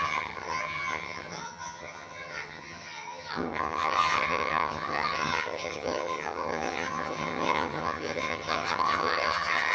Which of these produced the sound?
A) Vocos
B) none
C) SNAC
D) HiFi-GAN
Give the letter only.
D